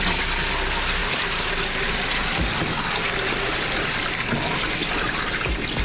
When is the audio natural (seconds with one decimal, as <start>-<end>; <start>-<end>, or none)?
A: 0.0-5.8